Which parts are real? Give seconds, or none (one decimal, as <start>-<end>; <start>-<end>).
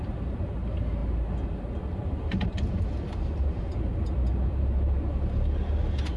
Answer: 0.0-6.2